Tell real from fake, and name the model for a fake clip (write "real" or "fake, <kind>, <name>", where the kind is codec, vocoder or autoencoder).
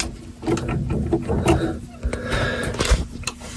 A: real